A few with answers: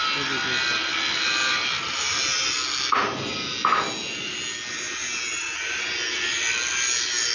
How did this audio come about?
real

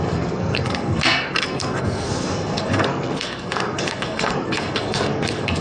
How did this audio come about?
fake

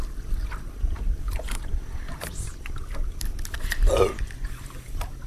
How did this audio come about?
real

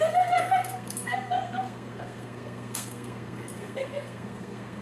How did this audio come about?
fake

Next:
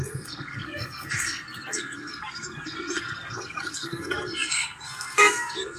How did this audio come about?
fake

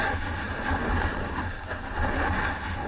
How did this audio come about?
real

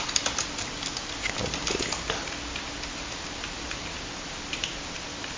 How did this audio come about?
real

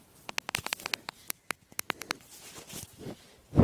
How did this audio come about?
real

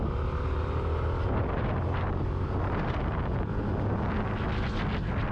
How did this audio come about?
real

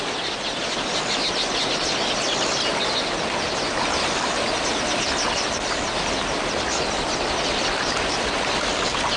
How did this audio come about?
real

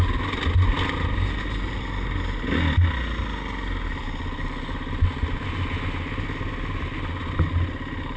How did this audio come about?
real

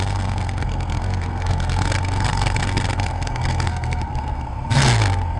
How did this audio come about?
fake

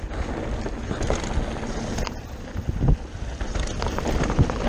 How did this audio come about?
real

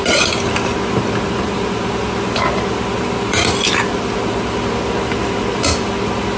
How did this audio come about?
real